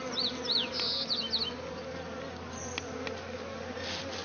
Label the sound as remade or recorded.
recorded